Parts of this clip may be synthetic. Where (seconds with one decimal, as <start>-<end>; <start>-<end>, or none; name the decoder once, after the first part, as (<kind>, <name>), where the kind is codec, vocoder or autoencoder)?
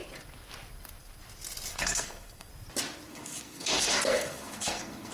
1.7-2.5 (codec, SNAC); 3.1-5.1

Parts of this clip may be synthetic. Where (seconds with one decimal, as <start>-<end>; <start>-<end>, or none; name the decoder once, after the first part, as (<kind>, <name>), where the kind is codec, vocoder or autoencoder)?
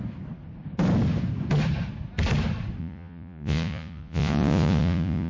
2.8-5.3 (vocoder, Vocos)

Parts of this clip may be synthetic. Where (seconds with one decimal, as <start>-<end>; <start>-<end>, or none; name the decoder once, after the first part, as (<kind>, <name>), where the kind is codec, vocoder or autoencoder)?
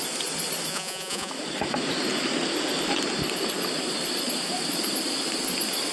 0.7-1.3 (vocoder, Vocos)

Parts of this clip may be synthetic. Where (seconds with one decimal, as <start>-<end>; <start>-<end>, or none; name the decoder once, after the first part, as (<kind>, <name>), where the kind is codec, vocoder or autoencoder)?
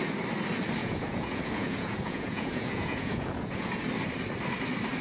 0.8-3.8 (vocoder, Vocos)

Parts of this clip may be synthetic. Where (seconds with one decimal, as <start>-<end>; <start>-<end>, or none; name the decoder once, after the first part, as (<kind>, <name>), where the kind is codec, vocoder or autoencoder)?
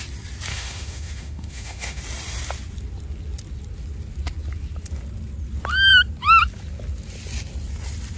0.5-2.0 (autoencoder, DAC-VAE)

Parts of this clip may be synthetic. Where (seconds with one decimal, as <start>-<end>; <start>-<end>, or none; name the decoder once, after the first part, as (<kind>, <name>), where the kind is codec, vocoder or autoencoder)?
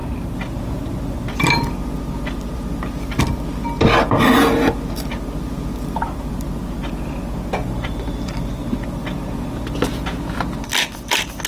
none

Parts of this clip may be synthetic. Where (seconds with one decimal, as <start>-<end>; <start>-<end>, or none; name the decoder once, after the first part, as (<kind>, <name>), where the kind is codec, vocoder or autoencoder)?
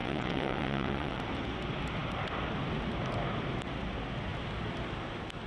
0.0-1.2 (vocoder, WaveNeXt)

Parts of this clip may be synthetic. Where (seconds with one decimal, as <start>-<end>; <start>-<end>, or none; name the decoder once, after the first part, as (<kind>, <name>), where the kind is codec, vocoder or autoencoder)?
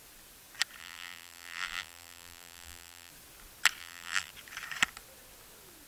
0.8-3.1 (vocoder, BigVGAN v2); 3.8-4.3